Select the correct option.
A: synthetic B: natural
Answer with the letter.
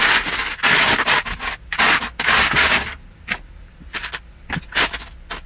B